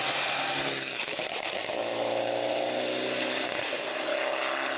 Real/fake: real